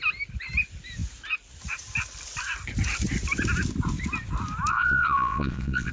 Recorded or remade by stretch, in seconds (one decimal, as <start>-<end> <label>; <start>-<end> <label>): 0.0-4.7 recorded; 4.7-5.9 remade